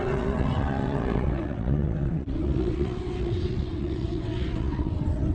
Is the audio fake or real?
fake